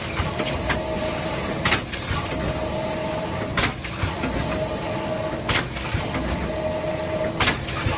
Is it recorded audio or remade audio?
recorded